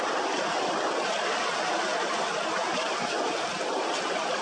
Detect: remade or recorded recorded